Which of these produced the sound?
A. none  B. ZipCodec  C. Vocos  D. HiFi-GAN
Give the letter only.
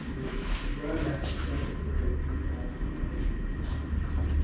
A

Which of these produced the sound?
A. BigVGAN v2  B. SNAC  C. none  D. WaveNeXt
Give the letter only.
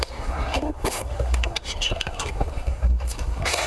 B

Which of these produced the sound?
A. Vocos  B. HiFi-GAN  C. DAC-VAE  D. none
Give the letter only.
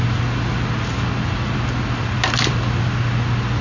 D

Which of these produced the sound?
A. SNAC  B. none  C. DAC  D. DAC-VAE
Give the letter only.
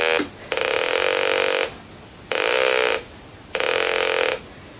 B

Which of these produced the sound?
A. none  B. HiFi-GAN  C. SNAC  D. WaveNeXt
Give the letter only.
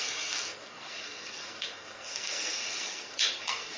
C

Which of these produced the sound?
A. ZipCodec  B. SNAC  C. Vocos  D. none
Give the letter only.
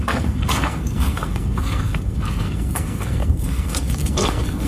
B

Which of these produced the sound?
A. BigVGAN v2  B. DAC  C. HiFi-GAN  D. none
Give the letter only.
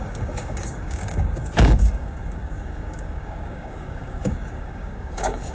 B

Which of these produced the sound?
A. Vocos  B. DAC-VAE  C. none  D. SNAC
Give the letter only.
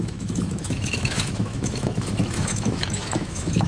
B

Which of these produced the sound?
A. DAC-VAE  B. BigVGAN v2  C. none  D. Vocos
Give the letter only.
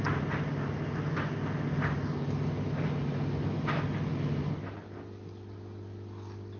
C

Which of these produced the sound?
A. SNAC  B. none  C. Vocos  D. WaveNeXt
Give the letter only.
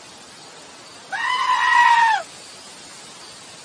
B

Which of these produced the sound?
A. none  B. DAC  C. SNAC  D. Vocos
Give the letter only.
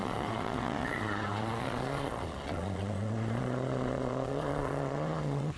D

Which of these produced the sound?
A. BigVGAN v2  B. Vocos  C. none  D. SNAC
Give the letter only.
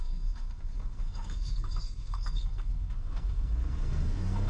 D